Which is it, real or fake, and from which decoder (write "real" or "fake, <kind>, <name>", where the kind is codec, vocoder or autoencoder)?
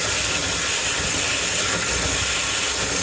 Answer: real